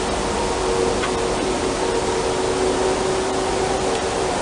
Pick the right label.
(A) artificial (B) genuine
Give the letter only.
B